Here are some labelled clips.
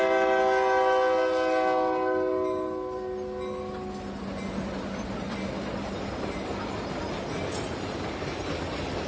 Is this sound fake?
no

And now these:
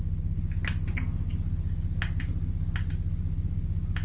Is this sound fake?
no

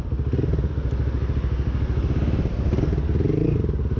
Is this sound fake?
no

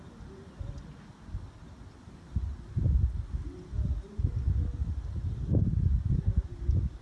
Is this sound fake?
no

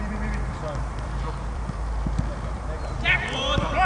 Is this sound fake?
yes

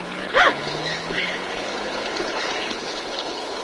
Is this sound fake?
yes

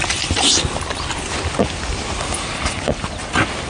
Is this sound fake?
no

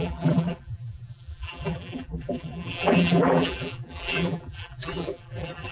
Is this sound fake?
yes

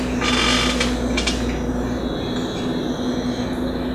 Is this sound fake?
no